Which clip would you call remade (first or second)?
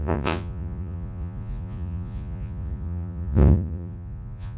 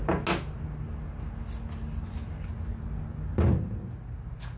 first